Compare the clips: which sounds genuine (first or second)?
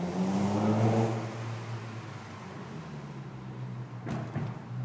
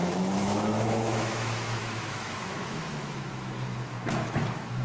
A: first